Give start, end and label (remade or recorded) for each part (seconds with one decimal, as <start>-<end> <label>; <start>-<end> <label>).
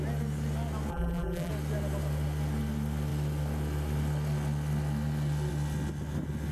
0.0-0.9 recorded; 0.9-1.5 remade; 1.5-6.5 recorded